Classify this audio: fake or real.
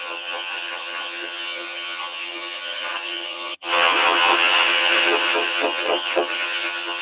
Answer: fake